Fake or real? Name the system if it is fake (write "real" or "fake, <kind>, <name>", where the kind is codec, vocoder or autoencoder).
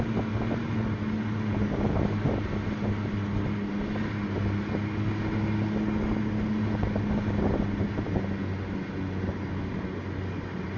real